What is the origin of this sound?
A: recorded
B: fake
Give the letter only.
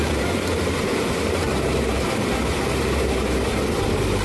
B